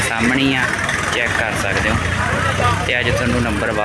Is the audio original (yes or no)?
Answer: no